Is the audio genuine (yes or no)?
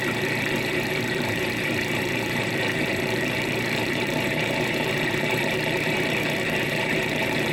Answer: no